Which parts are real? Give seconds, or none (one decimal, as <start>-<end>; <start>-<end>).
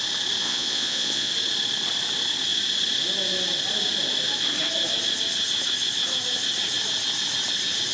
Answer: 0.0-0.4; 1.3-7.9